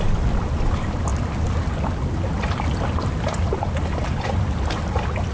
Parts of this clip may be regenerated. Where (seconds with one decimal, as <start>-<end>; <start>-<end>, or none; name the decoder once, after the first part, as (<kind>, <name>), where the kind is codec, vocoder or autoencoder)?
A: none